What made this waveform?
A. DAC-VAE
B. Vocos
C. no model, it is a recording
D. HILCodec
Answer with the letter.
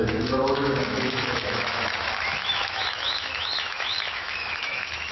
A